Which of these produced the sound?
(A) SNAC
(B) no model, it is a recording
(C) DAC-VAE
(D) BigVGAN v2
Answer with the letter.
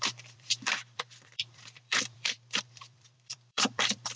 D